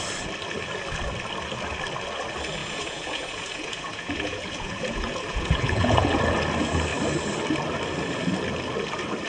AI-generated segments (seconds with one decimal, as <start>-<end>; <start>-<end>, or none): 2.6-6.2